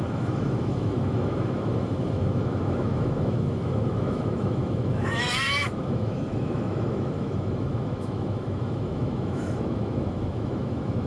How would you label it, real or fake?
fake